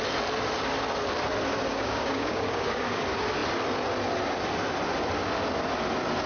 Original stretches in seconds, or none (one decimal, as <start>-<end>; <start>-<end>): 0.0-1.7; 3.0-6.3